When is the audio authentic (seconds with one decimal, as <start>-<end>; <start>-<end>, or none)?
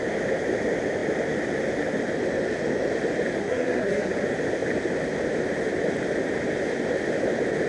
0.0-3.4; 4.1-7.7